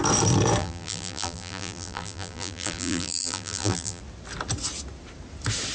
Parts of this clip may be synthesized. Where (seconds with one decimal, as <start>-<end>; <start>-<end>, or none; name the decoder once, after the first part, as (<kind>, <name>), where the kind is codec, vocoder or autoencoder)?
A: 0.6-4.0 (vocoder, BigVGAN v2)